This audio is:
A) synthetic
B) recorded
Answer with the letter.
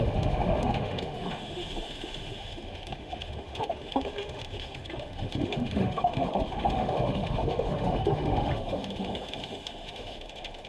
A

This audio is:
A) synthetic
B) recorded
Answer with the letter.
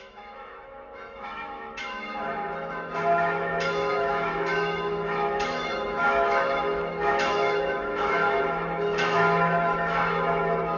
A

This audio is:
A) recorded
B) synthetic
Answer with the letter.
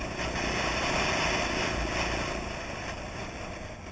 A